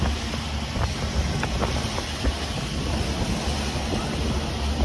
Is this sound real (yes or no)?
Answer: yes